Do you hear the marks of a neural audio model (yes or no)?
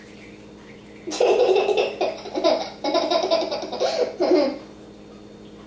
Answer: no